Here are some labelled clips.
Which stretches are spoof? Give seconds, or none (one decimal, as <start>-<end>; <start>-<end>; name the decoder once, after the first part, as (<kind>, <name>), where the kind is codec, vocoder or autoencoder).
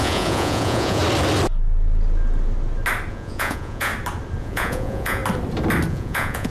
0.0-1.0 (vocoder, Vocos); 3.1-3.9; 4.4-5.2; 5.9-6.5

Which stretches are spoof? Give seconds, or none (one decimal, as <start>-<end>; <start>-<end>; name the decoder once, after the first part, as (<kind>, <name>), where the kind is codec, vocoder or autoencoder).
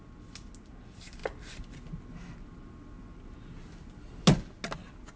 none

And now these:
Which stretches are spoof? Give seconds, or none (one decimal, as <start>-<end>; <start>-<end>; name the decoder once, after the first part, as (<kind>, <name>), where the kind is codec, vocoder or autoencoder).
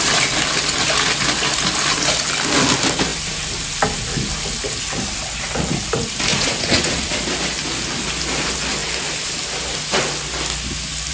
6.3-7.1 (vocoder, Vocos)